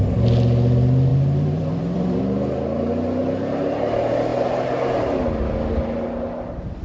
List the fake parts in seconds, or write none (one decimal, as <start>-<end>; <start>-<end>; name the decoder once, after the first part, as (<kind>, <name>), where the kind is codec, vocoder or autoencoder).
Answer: 1.1-2.2 (vocoder, BigVGAN v2)